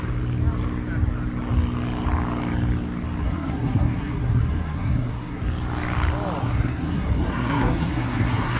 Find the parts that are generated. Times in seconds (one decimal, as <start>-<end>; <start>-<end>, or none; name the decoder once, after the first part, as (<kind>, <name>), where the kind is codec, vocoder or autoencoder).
3.2-5.4 (codec, SNAC); 6.4-8.6